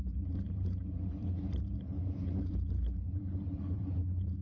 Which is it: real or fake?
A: fake